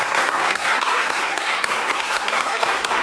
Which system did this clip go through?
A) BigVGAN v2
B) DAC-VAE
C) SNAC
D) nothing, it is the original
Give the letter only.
C